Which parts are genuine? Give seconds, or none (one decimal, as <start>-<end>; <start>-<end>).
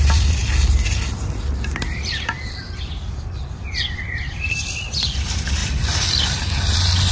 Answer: 0.4-2.0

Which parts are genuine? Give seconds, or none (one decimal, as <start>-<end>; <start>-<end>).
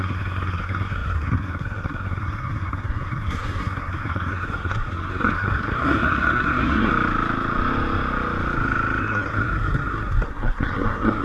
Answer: 6.9-9.0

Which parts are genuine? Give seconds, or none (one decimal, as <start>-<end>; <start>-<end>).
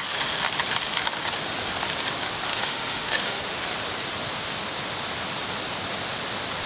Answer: 0.0-2.5; 3.4-6.7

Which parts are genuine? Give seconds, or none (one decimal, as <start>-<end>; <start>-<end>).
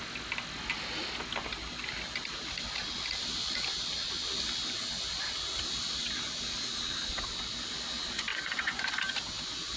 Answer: 0.0-8.3; 8.9-9.8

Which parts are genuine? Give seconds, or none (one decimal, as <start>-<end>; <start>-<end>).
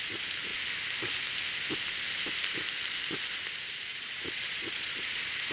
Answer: 0.0-3.9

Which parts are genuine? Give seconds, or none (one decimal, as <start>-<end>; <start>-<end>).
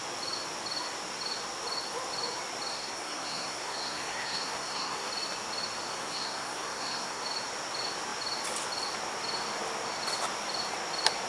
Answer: 0.0-2.7; 5.1-5.9; 7.2-11.3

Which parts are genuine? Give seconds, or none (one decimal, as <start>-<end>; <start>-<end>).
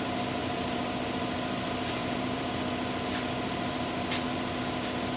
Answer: 0.0-0.4; 1.0-2.0; 2.5-5.2